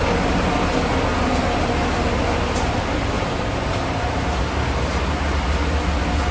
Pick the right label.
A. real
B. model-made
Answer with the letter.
A